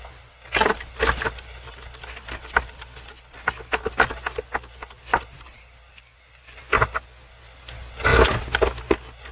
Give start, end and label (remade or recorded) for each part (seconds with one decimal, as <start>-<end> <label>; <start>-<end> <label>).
0.0-9.3 recorded

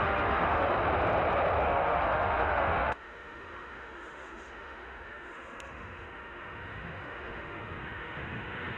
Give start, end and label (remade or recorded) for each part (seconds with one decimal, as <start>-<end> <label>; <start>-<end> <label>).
0.0-0.7 remade; 0.7-1.6 recorded; 1.6-8.8 remade

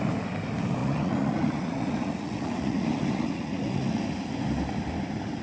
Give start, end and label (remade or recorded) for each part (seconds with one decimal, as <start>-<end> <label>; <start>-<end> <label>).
0.0-0.8 recorded; 0.8-4.0 remade; 4.0-5.4 recorded

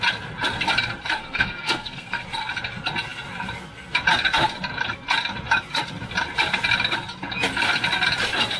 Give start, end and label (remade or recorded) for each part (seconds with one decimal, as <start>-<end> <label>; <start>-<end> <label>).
0.0-1.2 recorded; 1.2-2.2 remade; 2.2-8.6 recorded

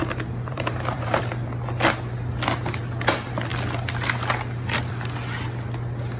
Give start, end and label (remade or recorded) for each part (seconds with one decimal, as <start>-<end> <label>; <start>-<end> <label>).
0.0-1.2 remade; 1.2-6.2 recorded